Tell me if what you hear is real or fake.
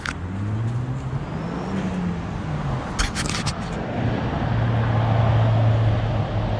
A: real